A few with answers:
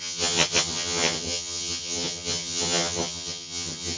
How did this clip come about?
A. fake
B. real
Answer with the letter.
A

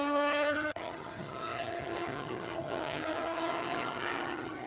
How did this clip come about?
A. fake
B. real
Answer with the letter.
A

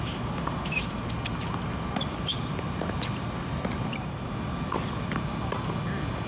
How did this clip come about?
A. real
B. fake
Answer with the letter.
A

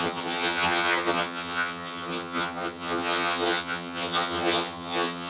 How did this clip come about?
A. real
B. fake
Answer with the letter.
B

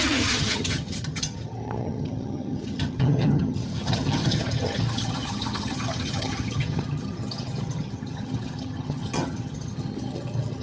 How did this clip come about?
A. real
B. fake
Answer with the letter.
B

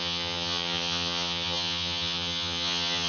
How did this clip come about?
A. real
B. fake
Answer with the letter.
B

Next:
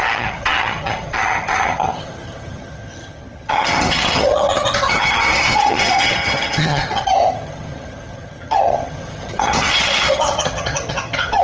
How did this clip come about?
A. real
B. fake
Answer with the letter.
B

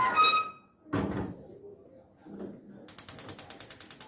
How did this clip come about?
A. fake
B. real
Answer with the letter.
B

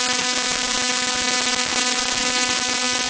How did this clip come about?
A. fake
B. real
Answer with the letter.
B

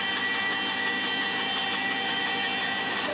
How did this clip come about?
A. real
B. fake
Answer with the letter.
A